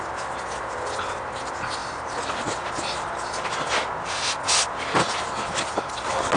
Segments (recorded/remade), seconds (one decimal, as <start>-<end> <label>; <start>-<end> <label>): 0.0-6.4 recorded